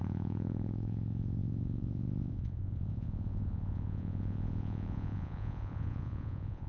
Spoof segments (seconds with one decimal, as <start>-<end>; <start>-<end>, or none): 0.0-6.7